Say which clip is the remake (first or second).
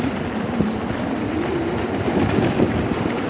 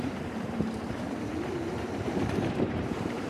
second